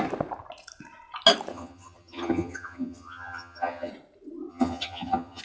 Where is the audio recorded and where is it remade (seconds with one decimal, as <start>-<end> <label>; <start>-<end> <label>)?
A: 0.0-1.5 recorded; 1.5-3.9 remade; 3.9-4.5 recorded; 4.5-5.4 remade